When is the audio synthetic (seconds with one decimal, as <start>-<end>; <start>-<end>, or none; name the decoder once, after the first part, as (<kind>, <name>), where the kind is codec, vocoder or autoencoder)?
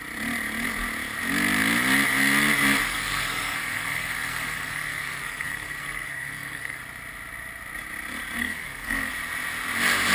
2.9-6.8 (codec, SNAC); 8.4-9.1